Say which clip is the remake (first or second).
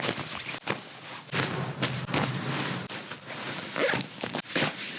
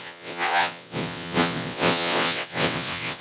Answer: second